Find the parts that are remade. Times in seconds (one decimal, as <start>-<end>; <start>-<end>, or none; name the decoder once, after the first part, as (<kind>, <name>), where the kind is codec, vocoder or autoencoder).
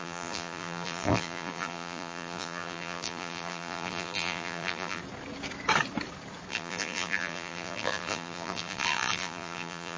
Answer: 0.0-5.0 (vocoder, BigVGAN v2); 6.5-10.0